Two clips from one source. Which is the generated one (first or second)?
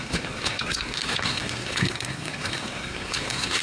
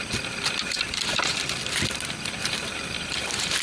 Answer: first